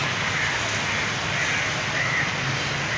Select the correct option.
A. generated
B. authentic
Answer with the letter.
B